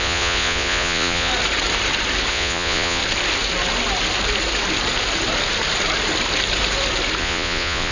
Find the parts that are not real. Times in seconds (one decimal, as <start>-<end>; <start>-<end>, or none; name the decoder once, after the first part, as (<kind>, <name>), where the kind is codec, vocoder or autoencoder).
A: 0.0-1.3 (vocoder, Vocos); 2.3-3.0; 7.2-7.9